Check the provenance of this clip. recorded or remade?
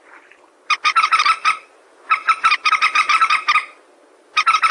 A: recorded